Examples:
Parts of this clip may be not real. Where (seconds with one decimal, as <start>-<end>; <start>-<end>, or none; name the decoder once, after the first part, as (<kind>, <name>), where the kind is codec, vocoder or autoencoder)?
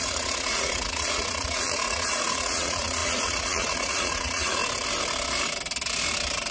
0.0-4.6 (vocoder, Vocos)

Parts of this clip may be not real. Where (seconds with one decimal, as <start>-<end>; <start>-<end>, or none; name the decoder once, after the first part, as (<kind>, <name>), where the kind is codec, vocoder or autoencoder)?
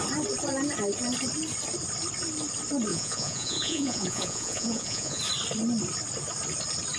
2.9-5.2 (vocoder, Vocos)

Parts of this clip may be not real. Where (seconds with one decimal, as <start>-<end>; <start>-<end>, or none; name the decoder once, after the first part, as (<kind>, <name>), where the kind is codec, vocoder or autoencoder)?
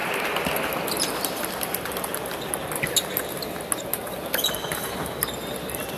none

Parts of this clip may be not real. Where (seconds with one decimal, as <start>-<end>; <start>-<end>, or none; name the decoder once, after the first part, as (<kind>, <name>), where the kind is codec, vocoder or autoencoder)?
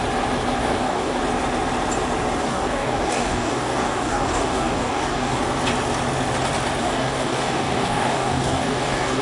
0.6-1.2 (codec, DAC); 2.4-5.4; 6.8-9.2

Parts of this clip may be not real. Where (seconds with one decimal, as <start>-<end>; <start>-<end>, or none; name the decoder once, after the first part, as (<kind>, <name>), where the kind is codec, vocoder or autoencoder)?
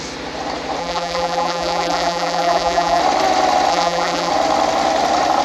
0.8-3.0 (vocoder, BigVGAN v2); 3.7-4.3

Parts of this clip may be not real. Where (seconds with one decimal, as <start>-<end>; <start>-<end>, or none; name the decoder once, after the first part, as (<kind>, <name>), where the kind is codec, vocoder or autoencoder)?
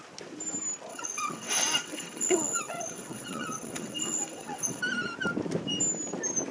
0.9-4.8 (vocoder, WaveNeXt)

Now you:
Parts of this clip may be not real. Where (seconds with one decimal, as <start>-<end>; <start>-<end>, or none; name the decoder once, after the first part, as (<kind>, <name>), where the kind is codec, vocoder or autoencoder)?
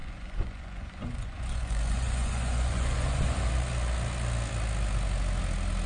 0.0-3.5 (vocoder, Vocos)